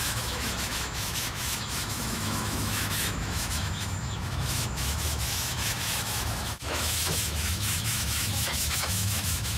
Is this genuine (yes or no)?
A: no